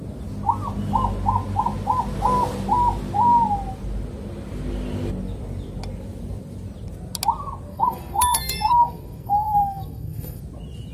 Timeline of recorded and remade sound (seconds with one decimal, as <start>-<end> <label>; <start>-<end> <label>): 0.0-7.7 recorded; 7.7-10.4 remade; 10.4-10.9 recorded